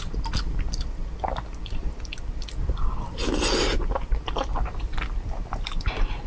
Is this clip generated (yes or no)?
no